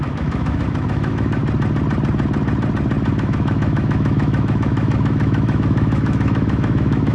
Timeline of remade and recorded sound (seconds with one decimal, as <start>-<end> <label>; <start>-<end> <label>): 0.0-1.4 remade; 1.4-3.1 recorded; 3.1-7.1 remade